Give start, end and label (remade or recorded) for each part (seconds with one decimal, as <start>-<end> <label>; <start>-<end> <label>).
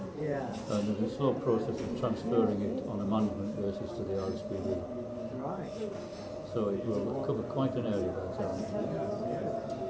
0.0-9.9 recorded